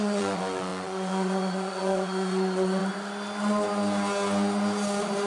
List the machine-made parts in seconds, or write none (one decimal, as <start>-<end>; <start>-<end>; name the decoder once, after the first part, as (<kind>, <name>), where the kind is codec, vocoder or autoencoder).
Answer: 0.0-2.8 (vocoder, Vocos)